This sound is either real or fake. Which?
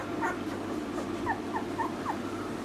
real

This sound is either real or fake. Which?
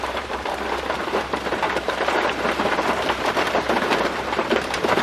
fake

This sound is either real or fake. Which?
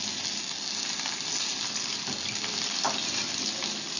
real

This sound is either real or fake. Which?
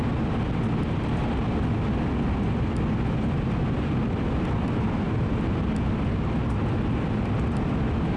real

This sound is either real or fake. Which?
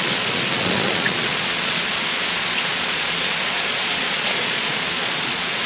fake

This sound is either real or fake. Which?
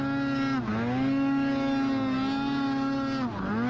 real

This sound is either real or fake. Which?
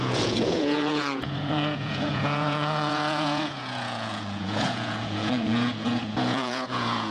fake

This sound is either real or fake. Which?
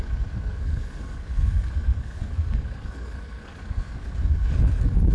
fake